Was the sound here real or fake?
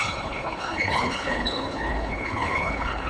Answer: fake